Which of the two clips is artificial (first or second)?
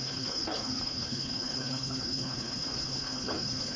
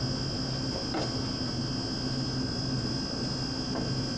first